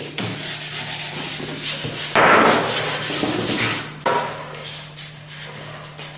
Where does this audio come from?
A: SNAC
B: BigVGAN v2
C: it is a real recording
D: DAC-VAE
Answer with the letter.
B